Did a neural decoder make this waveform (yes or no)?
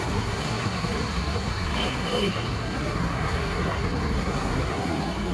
yes